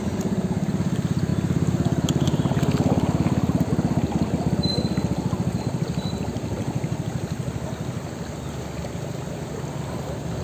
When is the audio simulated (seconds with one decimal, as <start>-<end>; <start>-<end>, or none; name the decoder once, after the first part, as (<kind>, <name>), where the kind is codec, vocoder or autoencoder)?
none

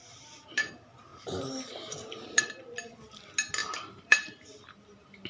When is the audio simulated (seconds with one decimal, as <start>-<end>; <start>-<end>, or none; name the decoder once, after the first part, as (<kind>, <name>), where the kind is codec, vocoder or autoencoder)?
0.0-0.7 (vocoder, BigVGAN v2); 1.1-2.7; 3.6-5.3